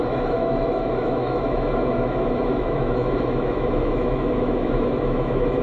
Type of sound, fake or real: fake